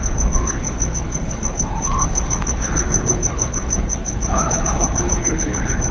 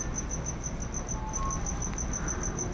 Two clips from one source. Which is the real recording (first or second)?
second